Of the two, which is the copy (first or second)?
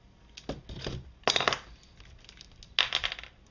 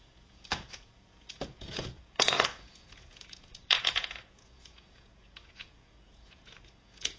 second